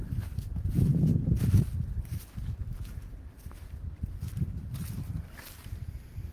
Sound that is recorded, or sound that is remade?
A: remade